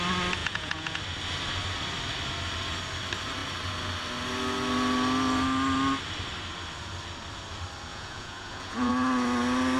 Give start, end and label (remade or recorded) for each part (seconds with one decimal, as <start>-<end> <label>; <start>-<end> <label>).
0.0-0.4 recorded; 0.4-1.0 remade; 1.0-7.9 recorded; 7.9-8.9 remade; 8.9-9.8 recorded